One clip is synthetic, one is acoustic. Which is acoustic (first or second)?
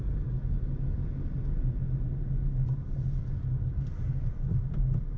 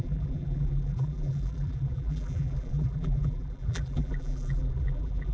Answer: first